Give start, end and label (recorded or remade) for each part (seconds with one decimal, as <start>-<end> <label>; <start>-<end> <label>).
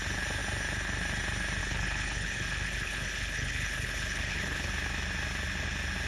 0.0-1.6 recorded; 1.6-4.7 remade; 4.7-6.1 recorded